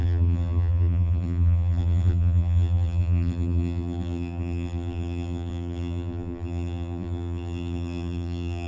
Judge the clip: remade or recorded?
remade